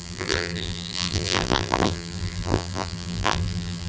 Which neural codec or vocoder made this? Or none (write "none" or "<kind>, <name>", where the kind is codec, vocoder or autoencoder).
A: vocoder, BigVGAN v2